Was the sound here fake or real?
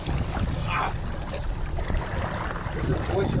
real